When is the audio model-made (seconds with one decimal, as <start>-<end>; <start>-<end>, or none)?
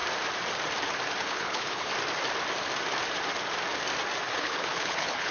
1.2-1.9; 4.3-5.3